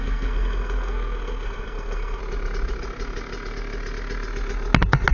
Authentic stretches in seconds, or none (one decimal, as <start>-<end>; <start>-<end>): 2.2-5.1